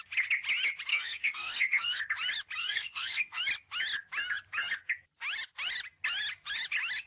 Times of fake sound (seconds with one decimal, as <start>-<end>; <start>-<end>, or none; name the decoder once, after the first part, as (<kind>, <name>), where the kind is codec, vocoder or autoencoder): 0.9-2.0 (codec, SNAC); 2.6-3.4